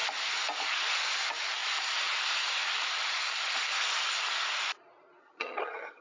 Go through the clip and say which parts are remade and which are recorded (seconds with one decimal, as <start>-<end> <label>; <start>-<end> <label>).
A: 0.0-5.2 recorded; 5.2-6.0 remade